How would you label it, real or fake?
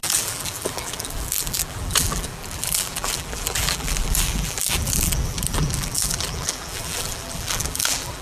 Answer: fake